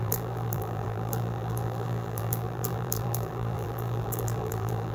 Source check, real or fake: fake